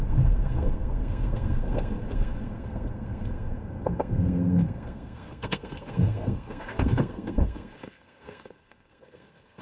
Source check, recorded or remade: remade